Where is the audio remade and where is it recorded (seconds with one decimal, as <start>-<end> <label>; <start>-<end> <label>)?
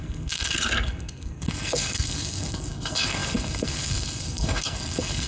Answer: 0.0-5.3 remade